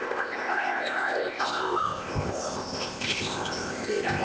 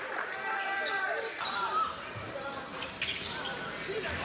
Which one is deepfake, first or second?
first